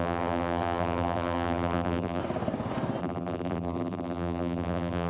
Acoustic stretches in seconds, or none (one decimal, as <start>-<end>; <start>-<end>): 2.2-3.0